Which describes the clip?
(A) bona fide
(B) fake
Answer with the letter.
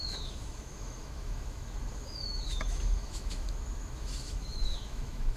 B